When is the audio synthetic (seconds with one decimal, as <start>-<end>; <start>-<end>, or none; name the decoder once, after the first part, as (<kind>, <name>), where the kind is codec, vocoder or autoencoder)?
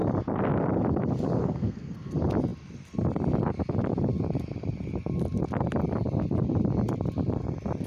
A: 1.4-2.1 (codec, SNAC)